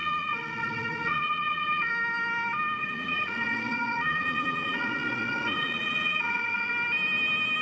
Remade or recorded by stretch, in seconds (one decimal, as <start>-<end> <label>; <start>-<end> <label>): 0.0-1.9 remade; 1.9-2.8 recorded; 2.8-6.7 remade; 6.7-7.6 recorded